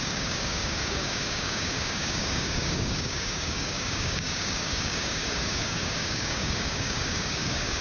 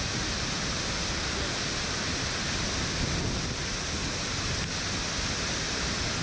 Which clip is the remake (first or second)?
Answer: first